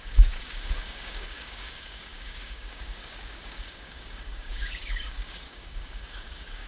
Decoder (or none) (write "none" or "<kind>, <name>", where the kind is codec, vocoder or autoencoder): codec, DAC